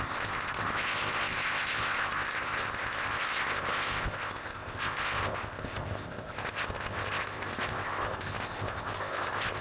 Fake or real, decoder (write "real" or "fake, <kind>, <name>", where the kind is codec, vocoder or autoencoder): fake, codec, ZipCodec